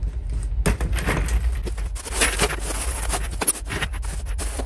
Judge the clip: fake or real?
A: real